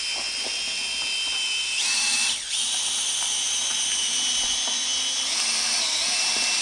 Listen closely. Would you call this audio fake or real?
real